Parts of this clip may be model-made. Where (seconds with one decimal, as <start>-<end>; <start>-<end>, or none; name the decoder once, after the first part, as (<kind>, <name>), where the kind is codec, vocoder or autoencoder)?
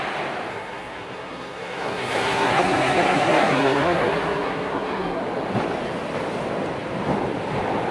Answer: 0.5-5.2 (codec, SNAC)